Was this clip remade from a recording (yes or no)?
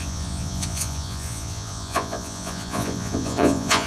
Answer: yes